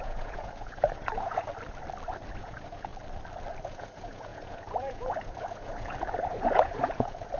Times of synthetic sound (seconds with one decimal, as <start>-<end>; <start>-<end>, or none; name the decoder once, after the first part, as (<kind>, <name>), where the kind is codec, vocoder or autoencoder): 0.0-1.5 (vocoder, Vocos); 2.4-2.9; 3.6-7.4